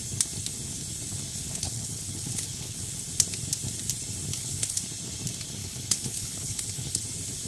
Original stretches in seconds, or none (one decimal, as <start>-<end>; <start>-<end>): 0.0-1.4; 2.9-4.3; 4.8-5.6; 7.0-7.5